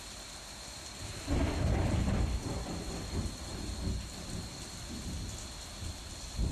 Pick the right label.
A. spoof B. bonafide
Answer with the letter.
A